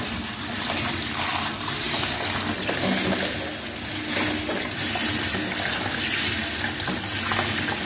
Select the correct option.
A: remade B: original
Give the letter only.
B